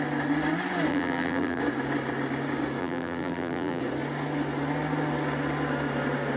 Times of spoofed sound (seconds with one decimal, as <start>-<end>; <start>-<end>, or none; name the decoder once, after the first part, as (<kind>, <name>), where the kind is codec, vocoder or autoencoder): 0.9-1.6 (vocoder, BigVGAN v2); 2.8-3.8